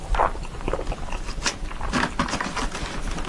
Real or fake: real